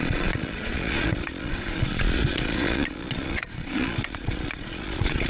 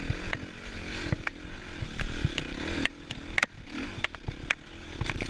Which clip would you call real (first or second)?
second